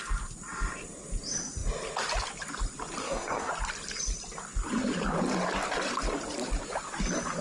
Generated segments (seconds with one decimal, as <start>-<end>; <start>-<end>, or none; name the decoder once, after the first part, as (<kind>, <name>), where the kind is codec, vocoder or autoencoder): 3.0-3.5 (codec, SNAC)